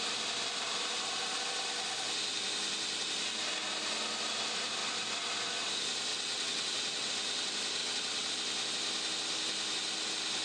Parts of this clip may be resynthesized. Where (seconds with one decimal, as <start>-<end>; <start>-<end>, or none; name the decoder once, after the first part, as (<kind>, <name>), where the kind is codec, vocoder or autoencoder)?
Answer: 6.1-7.1 (vocoder, WaveNeXt); 7.8-8.3